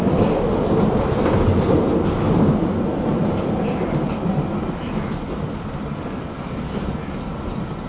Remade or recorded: recorded